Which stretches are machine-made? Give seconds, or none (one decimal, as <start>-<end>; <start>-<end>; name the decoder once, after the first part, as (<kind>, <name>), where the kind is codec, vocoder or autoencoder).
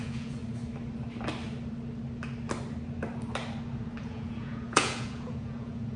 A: 0.0-0.4 (vocoder, Vocos); 4.0-6.0